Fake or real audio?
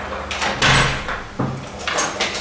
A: real